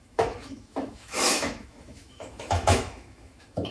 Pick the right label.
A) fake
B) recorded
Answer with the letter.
A